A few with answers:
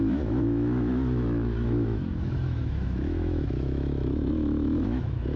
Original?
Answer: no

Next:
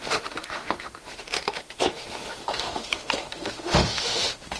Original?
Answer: no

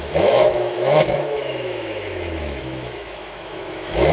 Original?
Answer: no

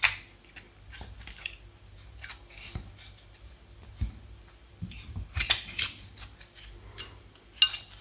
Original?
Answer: yes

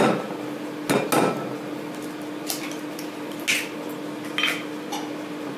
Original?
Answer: yes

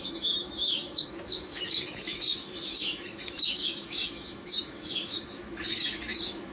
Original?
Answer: no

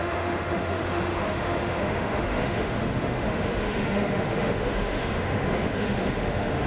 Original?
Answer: no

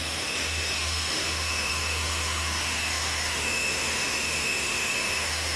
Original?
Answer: no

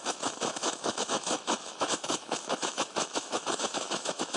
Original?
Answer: no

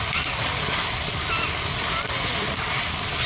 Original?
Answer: yes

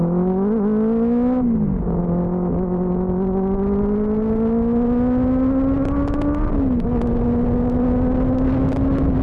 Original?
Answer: yes